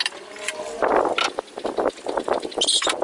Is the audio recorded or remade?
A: recorded